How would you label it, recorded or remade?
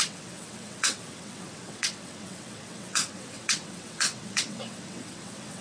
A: remade